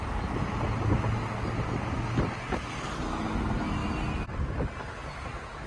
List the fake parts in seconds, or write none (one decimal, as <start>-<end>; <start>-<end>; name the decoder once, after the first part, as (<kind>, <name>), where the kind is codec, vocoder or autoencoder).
none